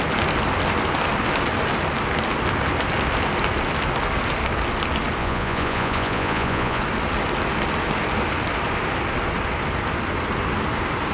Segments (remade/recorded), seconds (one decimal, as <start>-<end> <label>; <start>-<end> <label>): 0.0-5.2 recorded; 5.2-6.8 remade; 6.8-11.1 recorded